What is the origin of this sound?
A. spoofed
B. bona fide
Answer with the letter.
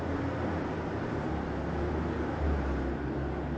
B